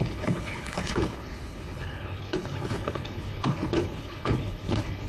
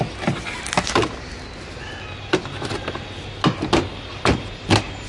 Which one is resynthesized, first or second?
first